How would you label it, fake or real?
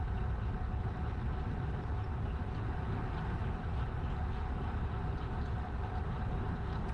real